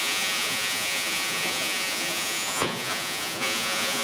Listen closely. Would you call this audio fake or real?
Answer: fake